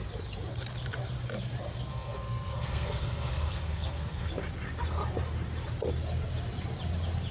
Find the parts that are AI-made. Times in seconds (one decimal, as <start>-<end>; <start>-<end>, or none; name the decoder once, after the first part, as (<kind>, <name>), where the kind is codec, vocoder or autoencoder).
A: 1.9-4.3 (codec, SNAC)